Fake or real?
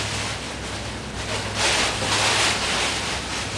real